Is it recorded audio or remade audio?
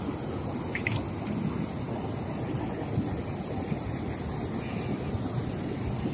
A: recorded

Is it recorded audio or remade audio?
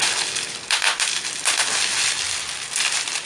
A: recorded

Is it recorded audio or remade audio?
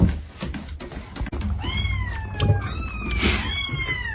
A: recorded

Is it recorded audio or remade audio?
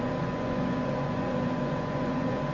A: remade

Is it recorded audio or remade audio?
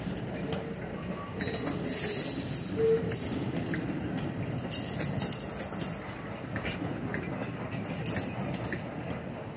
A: recorded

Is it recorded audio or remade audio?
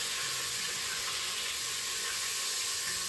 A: remade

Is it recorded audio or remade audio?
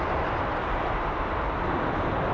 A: recorded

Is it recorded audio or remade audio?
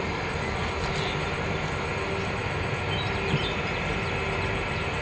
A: recorded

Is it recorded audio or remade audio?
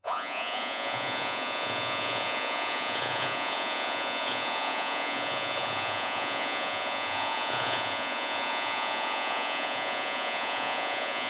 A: remade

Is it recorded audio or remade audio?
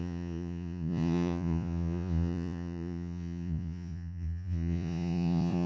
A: remade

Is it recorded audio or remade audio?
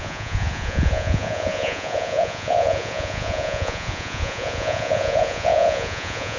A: remade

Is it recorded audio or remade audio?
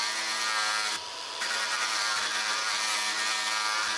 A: recorded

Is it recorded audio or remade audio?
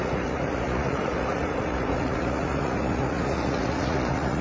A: remade